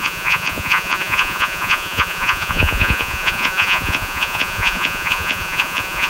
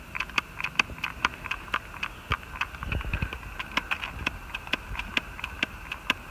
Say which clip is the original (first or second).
second